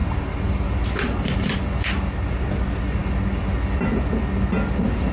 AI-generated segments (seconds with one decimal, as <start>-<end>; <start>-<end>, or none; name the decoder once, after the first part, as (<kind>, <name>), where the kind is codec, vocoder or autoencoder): 0.0-1.7 (vocoder, BigVGAN v2)